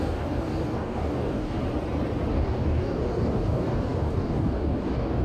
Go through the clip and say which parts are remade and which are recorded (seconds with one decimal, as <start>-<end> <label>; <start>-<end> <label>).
0.0-1.6 remade; 1.6-2.3 recorded; 2.3-5.2 remade